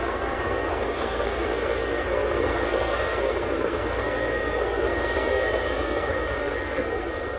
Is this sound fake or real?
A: fake